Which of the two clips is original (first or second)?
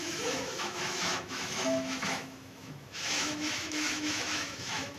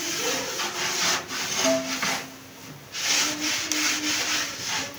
second